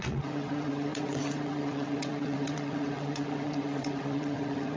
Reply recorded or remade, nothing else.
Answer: remade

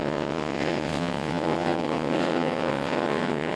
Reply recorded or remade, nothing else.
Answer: remade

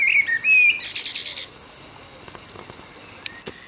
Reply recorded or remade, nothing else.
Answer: recorded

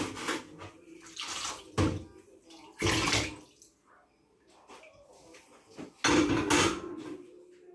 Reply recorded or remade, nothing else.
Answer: recorded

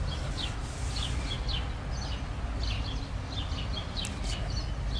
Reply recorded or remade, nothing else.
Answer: recorded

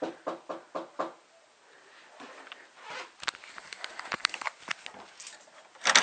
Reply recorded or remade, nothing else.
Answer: recorded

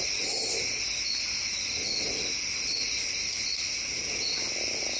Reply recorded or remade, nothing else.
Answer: recorded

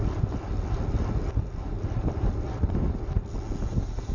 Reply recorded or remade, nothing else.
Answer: recorded